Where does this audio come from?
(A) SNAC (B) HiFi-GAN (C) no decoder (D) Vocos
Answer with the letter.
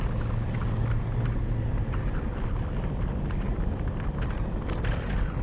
C